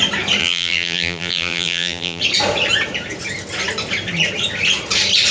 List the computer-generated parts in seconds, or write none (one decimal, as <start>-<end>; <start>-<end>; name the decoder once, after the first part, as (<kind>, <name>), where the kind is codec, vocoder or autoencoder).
0.4-2.2 (vocoder, BigVGAN v2)